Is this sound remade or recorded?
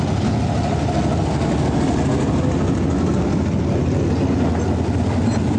recorded